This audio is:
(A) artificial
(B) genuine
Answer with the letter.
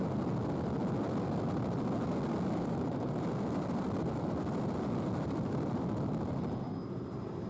B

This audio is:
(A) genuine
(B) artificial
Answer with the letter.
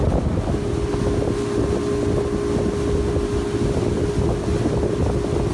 A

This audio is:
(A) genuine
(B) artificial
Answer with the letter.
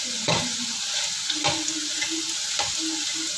A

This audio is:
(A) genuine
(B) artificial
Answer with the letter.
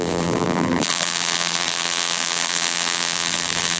B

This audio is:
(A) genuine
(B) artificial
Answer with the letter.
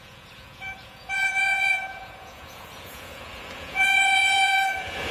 B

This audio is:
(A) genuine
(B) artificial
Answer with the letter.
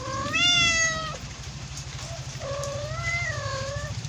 B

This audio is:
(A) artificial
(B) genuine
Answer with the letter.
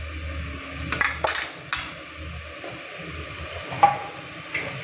B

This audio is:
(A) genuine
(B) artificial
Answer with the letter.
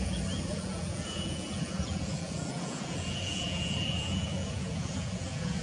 B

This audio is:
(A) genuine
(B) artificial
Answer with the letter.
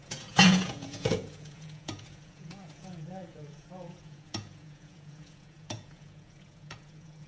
B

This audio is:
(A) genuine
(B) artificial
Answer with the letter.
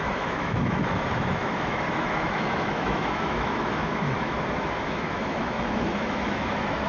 B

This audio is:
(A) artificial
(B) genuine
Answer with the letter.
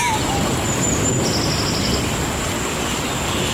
B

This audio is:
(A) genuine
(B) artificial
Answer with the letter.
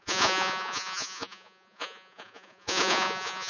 B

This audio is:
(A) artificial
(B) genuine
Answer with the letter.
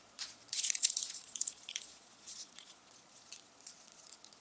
A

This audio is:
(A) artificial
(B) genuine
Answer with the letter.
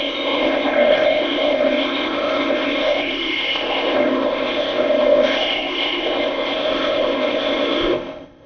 A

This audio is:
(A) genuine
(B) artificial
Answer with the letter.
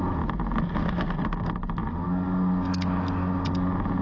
A